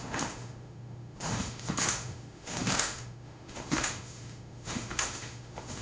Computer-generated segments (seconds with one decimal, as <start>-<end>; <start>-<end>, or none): 0.0-5.8